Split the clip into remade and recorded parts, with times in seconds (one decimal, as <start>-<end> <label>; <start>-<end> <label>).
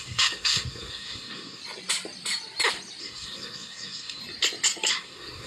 0.0-1.6 remade; 1.6-3.0 recorded; 3.0-4.2 remade; 4.2-4.9 recorded; 4.9-5.5 remade